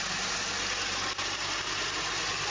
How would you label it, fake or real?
real